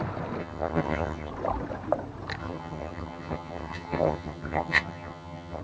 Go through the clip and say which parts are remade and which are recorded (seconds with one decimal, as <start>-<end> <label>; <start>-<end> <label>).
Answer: 0.0-0.4 recorded; 0.4-1.3 remade; 1.3-2.4 recorded; 2.4-5.6 remade